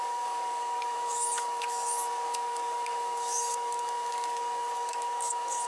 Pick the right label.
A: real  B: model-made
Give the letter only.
B